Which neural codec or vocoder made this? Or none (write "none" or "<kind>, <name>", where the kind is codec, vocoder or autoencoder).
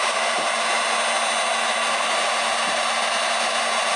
none